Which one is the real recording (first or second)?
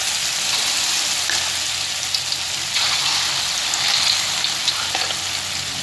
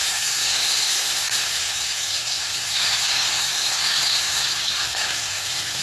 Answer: first